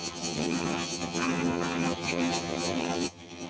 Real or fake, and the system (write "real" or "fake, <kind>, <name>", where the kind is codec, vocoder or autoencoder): fake, vocoder, HiFi-GAN